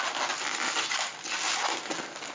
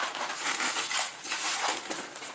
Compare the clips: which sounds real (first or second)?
first